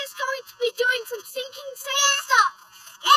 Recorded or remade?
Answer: remade